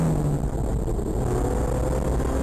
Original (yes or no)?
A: yes